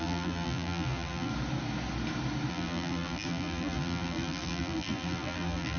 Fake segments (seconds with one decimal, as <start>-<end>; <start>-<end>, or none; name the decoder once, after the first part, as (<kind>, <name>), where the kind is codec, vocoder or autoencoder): 0.0-1.3 (vocoder, BigVGAN v2); 2.5-5.8